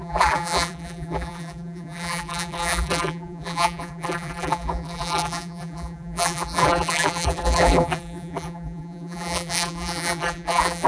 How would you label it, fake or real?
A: fake